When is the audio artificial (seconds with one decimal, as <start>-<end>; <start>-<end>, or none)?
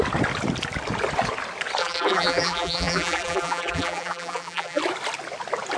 1.8-4.8